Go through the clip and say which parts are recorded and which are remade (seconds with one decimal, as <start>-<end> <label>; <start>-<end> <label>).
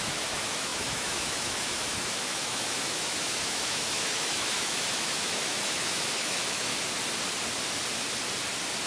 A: 0.0-6.7 remade; 6.7-8.9 recorded